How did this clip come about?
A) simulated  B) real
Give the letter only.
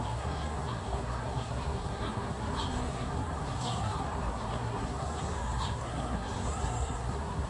A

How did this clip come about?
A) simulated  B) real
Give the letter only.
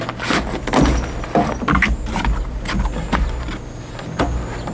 B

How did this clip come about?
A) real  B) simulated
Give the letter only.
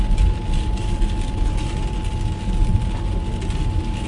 A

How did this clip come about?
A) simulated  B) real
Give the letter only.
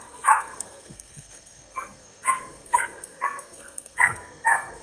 A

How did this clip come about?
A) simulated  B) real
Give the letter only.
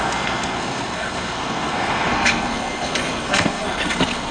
A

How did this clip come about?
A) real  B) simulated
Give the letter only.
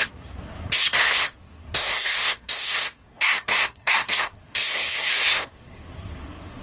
B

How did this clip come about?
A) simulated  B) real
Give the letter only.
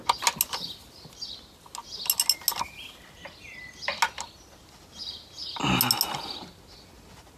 B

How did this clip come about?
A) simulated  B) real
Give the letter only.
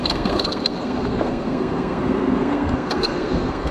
A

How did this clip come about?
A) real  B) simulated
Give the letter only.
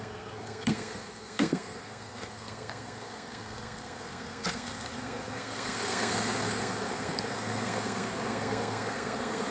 B